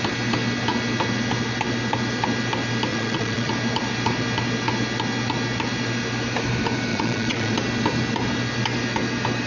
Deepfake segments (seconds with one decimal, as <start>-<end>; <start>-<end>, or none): 2.9-3.5; 6.9-7.5